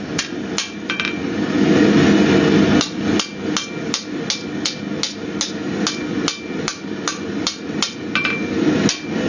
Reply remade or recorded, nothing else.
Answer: recorded